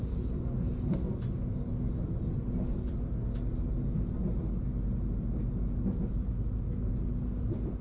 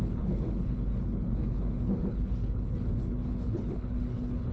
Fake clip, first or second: second